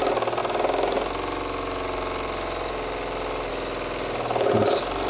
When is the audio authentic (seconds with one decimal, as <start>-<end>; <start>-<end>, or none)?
0.0-5.1